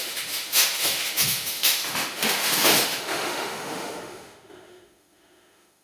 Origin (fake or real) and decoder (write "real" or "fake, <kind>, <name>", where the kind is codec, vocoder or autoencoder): fake, autoencoder, DAC-VAE